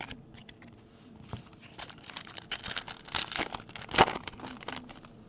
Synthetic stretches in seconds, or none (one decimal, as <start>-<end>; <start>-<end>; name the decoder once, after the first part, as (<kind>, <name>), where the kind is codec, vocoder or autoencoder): 0.4-2.4 (vocoder, BigVGAN v2)